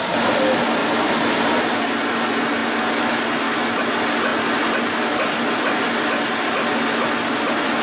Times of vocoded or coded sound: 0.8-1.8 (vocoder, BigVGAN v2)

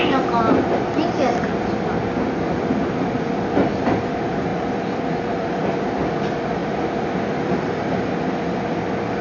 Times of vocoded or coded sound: 0.0-9.2 (vocoder, BigVGAN v2)

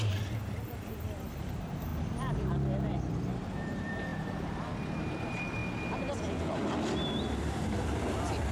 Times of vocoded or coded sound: 0.0-1.9 (vocoder, BigVGAN v2); 2.9-5.6; 7.4-8.5

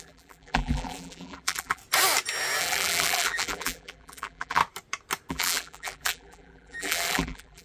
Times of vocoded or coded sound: 0.0-1.8 (vocoder, BigVGAN v2); 2.6-4.6; 5.3-7.6

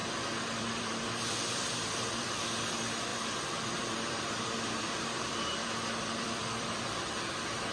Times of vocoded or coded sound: 0.0-2.4 (vocoder, BigVGAN v2); 3.1-7.1

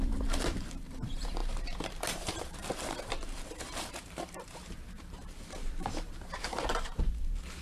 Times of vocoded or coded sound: 0.0-7.6 (vocoder, BigVGAN v2)

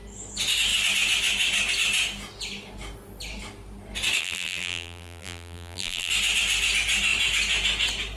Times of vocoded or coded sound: 4.2-6.1 (vocoder, BigVGAN v2)

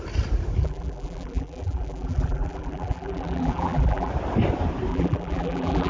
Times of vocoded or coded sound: 0.6-4.1 (vocoder, BigVGAN v2); 4.9-5.9